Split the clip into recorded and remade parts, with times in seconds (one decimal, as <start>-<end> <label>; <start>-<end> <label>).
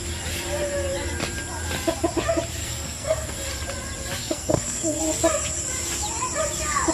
0.0-2.6 recorded; 2.6-3.5 remade; 3.5-4.2 recorded; 4.2-5.0 remade; 5.0-6.9 recorded